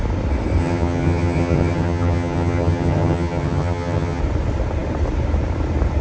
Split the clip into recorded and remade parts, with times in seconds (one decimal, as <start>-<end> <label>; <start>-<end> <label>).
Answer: 0.0-0.6 recorded; 0.6-4.2 remade; 4.2-6.0 recorded